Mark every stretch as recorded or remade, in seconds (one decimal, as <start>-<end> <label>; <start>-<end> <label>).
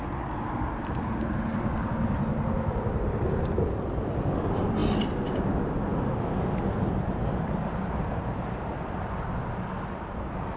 0.0-10.6 recorded